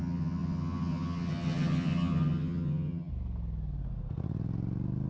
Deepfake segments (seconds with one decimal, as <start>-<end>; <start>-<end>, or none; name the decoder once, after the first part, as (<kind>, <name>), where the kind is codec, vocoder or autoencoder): 0.0-3.1 (vocoder, HiFi-GAN)

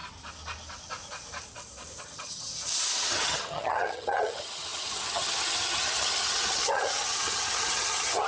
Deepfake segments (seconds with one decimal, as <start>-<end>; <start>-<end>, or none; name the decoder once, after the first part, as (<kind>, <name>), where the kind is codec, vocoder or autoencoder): 2.0-2.5 (vocoder, HiFi-GAN); 3.1-8.3

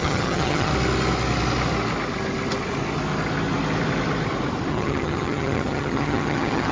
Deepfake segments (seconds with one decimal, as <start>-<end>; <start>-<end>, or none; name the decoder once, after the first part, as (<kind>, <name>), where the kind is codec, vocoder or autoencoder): 0.0-0.7 (vocoder, HiFi-GAN); 4.7-6.7

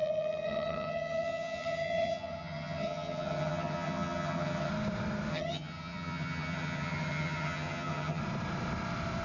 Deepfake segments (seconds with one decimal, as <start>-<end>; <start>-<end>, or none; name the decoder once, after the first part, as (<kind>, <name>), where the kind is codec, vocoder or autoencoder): 0.0-4.7 (vocoder, HiFi-GAN); 5.3-8.2

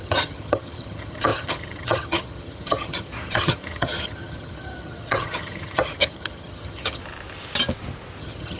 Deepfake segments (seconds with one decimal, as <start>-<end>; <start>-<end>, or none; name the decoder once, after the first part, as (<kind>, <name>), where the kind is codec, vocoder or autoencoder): 0.0-7.0 (vocoder, HiFi-GAN); 8.2-8.6

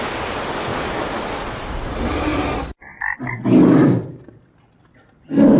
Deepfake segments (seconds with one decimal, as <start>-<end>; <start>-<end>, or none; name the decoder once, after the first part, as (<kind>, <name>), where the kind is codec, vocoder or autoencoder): none

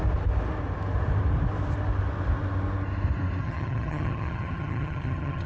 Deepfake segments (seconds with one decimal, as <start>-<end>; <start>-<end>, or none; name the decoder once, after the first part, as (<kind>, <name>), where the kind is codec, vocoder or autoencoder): 3.4-5.5 (vocoder, HiFi-GAN)

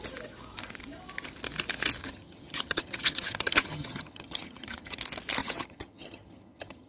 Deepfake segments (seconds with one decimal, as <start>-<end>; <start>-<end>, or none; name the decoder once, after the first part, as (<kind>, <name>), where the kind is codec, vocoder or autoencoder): 2.0-5.0 (vocoder, HiFi-GAN); 5.4-6.9